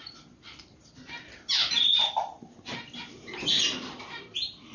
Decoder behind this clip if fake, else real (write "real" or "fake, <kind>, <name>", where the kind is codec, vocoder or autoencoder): real